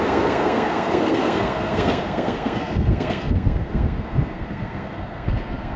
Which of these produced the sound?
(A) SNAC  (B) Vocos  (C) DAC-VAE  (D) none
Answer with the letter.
A